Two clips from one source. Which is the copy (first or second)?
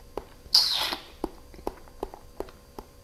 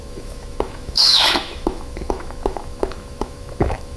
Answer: second